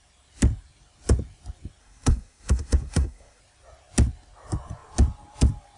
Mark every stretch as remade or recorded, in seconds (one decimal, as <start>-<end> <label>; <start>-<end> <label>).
0.0-1.8 recorded; 1.8-3.4 remade; 3.4-5.8 recorded